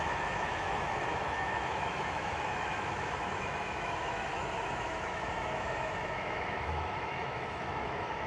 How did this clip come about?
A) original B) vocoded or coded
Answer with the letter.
B